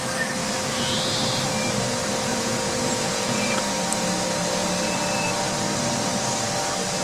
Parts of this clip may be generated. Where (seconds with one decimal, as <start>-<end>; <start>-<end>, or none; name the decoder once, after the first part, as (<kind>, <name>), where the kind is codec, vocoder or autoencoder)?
2.3-3.6 (vocoder, Vocos)

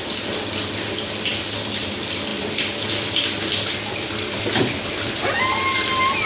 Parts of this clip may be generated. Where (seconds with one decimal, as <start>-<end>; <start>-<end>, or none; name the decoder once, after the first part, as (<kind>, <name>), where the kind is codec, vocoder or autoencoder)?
none

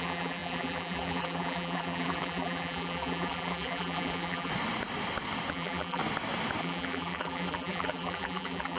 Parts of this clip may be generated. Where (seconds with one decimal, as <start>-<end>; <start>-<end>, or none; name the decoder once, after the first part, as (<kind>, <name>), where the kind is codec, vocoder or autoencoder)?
0.0-4.5 (vocoder, BigVGAN v2); 5.5-6.0; 6.6-8.8

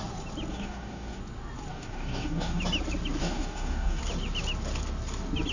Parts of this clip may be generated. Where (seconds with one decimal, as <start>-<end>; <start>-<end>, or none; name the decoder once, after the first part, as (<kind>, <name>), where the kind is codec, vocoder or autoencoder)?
0.5-1.2 (codec, DAC); 1.7-2.6; 3.2-4.0

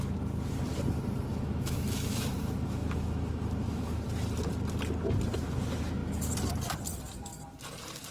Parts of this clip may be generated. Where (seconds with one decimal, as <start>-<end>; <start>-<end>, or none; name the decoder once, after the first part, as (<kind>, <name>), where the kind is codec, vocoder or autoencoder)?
1.3-4.0 (autoencoder, DAC-VAE)

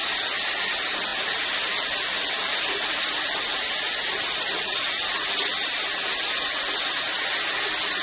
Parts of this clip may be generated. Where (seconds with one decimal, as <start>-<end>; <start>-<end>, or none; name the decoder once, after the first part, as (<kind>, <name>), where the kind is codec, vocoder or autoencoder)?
none

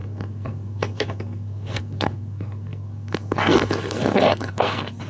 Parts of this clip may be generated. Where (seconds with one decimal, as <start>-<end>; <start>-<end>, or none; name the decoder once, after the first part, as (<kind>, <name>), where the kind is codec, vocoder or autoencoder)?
0.0-5.1 (codec, SNAC)